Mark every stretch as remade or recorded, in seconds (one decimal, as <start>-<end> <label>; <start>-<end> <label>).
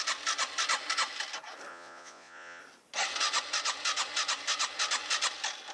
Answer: 0.0-1.7 recorded; 1.7-2.6 remade; 2.6-5.7 recorded